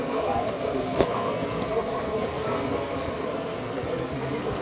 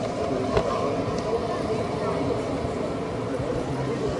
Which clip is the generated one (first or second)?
first